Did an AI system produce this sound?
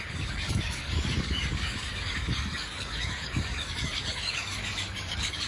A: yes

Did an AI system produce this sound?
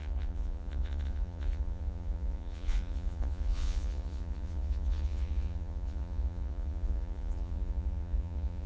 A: yes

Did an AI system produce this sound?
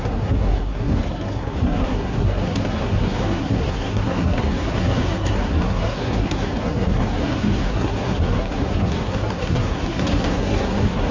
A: yes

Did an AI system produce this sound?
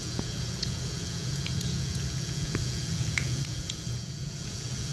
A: yes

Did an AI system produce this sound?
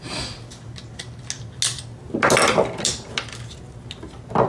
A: no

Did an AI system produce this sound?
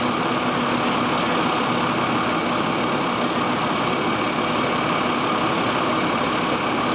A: no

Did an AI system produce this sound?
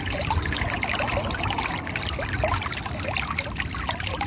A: no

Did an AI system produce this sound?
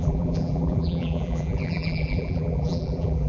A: yes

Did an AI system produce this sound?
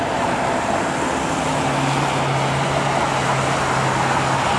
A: no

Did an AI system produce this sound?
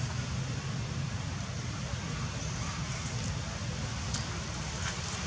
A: no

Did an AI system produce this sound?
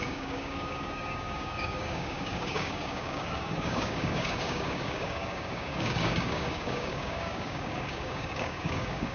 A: yes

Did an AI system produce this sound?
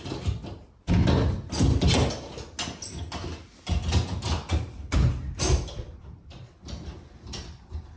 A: no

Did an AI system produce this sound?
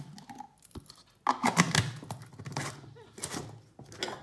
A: no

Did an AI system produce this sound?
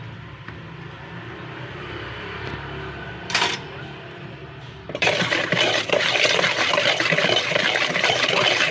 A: yes